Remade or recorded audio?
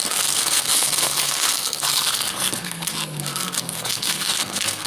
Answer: remade